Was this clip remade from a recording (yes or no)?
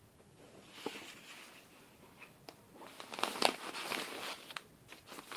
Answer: no